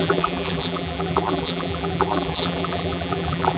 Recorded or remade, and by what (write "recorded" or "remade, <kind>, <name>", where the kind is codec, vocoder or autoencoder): remade, vocoder, BigVGAN v2